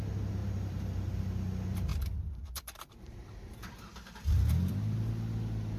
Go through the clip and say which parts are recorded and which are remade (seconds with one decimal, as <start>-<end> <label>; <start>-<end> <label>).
0.0-0.4 recorded; 0.4-1.2 remade; 1.2-1.9 recorded; 1.9-5.1 remade; 5.1-5.8 recorded